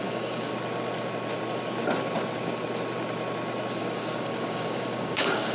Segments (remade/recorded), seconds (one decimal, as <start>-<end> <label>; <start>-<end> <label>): 0.0-0.5 remade; 0.5-3.8 recorded; 3.8-5.5 remade